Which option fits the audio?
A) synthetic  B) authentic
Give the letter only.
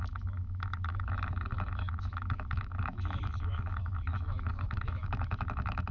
A